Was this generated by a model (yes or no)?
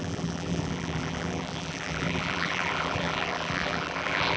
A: yes